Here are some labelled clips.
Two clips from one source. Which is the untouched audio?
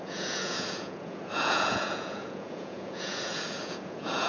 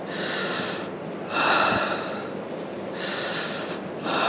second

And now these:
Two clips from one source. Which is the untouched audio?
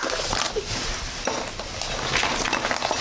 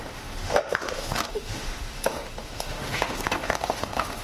first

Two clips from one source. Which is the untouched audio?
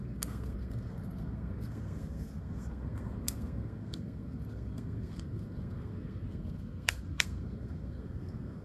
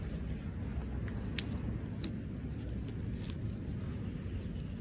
second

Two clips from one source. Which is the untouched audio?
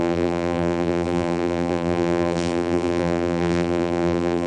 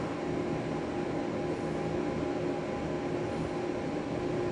second